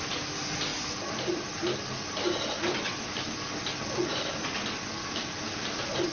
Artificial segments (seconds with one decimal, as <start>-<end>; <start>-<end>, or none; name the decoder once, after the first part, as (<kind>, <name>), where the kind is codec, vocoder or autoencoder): none